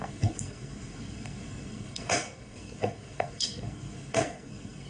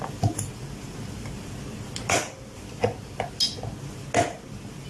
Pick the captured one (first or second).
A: second